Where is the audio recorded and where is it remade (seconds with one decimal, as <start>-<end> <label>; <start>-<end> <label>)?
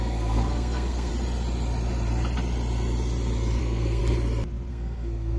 0.0-1.1 remade; 1.1-3.6 recorded; 3.6-4.0 remade; 4.0-4.7 recorded; 4.7-5.4 remade